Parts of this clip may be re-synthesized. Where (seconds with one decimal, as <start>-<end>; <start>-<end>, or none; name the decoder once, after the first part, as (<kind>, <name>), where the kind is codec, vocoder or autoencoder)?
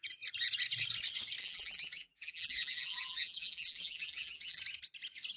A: 1.4-4.6 (vocoder, BigVGAN v2)